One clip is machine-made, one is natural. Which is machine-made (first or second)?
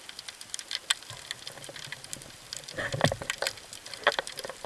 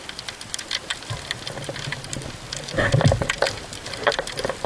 first